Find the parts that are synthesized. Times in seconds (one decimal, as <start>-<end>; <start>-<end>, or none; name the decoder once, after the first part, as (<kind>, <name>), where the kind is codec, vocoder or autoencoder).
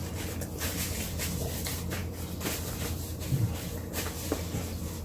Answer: none